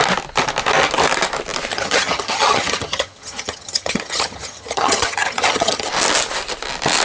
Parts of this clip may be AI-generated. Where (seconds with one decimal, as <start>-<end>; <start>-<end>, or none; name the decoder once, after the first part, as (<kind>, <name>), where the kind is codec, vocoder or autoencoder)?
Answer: 1.7-5.9 (vocoder, HiFi-GAN)